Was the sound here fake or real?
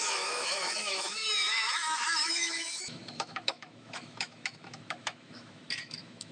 fake